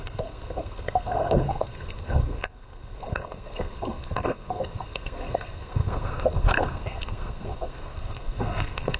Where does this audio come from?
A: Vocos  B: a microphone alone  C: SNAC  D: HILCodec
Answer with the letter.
C